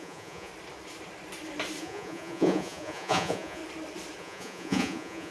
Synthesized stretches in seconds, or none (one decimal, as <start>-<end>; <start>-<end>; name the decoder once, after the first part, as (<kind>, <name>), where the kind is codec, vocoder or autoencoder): 0.0-0.5 (vocoder, Vocos); 1.8-3.6; 4.2-5.3